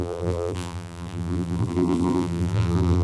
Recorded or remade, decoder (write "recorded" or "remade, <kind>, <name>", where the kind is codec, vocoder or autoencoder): remade, vocoder, BigVGAN v2